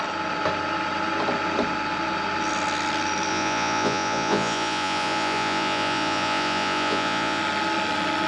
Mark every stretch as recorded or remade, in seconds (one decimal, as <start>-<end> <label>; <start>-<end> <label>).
0.0-3.3 recorded; 3.3-7.4 remade; 7.4-8.3 recorded